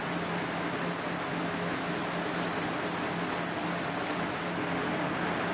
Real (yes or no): yes